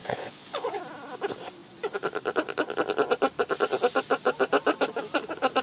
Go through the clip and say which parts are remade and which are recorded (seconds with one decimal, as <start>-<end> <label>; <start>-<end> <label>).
0.0-0.8 remade; 0.8-5.6 recorded